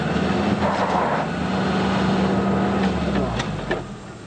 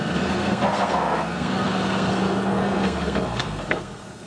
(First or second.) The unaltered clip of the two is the first